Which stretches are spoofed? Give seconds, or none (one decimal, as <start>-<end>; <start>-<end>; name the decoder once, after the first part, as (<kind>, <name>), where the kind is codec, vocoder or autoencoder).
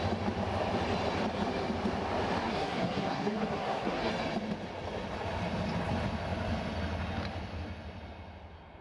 2.4-4.1 (codec, SNAC)